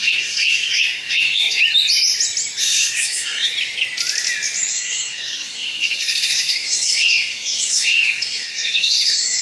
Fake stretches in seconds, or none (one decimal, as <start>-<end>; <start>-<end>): 0.0-1.6; 2.6-3.5; 4.7-9.4